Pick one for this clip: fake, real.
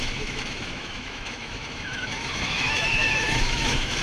fake